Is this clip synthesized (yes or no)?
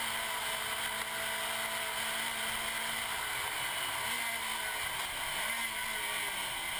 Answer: no